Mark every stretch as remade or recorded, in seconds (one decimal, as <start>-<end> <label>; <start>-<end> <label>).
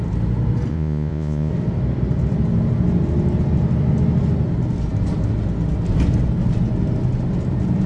0.0-0.7 recorded; 0.7-1.5 remade; 1.5-7.9 recorded